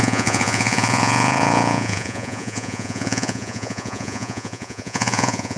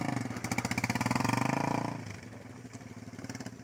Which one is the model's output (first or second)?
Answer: first